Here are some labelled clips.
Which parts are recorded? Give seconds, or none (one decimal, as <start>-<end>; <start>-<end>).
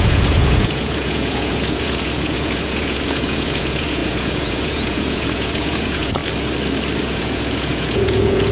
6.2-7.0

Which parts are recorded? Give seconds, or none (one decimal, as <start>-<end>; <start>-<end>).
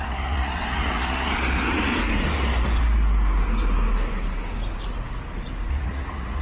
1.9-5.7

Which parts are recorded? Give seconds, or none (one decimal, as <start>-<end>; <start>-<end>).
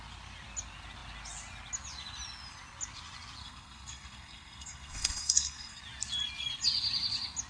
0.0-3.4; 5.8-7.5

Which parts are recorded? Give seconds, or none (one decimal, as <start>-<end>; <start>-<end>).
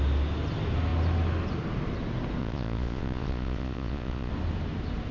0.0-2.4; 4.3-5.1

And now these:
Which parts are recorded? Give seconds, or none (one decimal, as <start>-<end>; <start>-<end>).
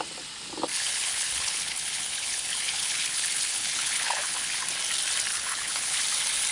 0.0-0.7; 4.6-5.3; 6.0-6.5